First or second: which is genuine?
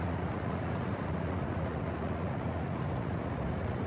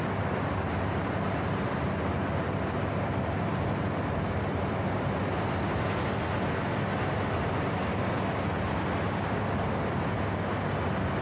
second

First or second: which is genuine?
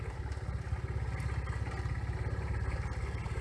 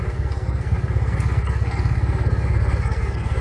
first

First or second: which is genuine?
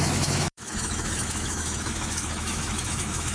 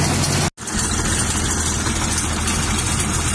second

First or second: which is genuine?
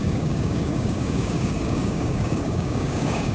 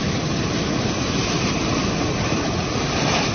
second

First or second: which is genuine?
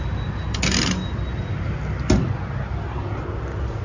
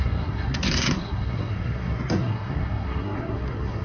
first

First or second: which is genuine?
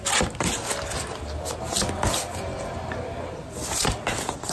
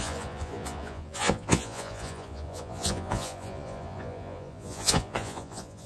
first